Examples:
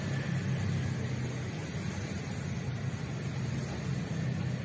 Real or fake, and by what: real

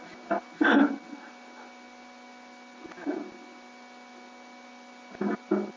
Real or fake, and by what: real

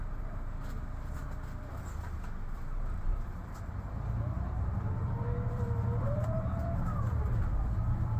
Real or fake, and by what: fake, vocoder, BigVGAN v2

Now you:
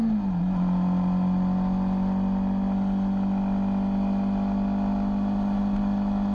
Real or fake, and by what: real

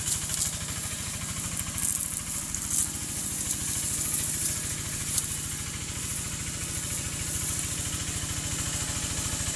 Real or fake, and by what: real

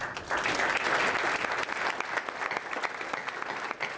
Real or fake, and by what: real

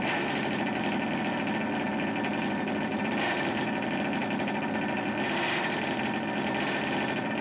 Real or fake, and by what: real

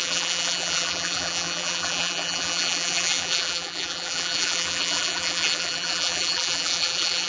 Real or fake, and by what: fake, vocoder, BigVGAN v2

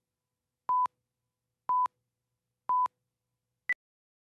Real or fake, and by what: real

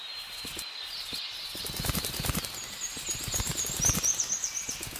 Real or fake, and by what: real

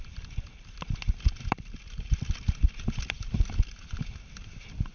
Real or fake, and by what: real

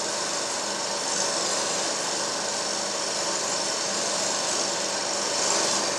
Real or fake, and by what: real